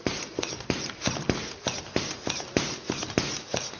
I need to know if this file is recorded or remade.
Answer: recorded